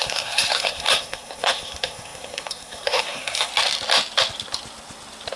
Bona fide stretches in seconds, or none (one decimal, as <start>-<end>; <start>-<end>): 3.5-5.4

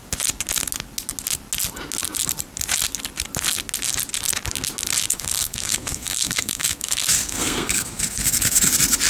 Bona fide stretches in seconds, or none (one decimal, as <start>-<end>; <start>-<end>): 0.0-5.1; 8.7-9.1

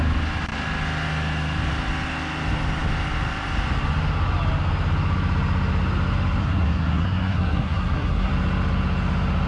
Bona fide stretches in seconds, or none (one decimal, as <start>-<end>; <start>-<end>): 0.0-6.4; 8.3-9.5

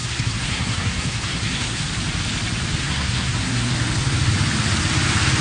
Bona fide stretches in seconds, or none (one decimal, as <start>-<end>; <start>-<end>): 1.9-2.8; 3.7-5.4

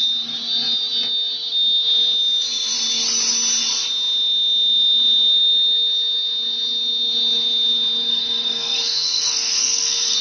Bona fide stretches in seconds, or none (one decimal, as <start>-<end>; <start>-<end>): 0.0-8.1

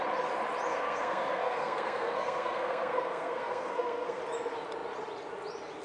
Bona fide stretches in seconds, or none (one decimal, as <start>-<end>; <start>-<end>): 0.0-0.7; 4.2-5.8

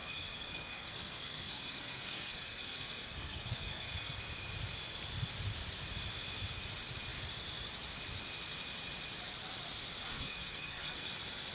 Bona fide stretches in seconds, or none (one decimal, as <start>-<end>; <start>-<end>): 4.2-10.1; 11.1-11.5